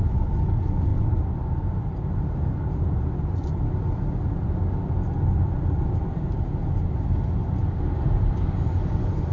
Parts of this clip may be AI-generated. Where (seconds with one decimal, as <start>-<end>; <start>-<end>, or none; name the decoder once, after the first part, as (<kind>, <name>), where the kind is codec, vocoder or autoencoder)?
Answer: none